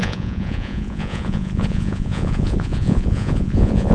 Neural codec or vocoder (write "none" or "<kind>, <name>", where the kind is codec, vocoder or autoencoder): vocoder, Vocos